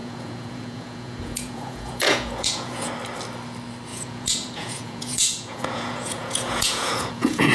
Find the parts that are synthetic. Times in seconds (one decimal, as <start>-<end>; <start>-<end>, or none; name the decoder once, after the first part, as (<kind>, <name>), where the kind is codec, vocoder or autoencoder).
0.0-2.9 (vocoder, Vocos); 3.9-7.5